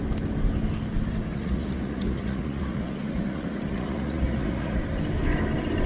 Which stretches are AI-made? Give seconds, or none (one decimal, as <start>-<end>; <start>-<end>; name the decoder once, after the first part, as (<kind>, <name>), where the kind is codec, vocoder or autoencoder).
1.3-4.8 (vocoder, Vocos)